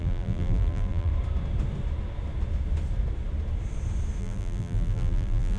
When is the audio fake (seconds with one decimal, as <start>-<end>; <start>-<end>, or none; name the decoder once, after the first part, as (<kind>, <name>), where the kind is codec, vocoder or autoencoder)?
0.0-1.1 (vocoder, BigVGAN v2); 4.2-5.6